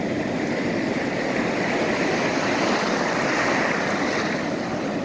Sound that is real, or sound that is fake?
real